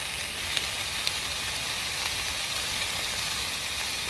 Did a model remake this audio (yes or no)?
no